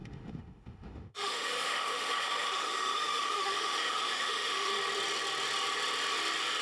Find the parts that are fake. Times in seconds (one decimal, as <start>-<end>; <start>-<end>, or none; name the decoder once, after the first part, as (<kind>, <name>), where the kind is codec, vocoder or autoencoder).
0.0-4.7 (autoencoder, DAC-VAE)